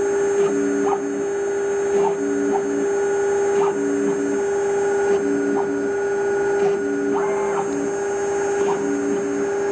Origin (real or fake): real